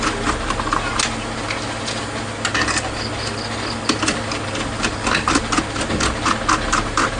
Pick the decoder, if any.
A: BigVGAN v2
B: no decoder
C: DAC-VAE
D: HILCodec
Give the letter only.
B